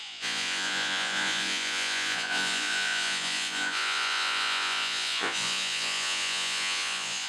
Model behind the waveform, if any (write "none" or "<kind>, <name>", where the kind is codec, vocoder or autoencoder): vocoder, Vocos